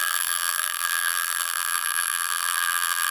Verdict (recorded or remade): remade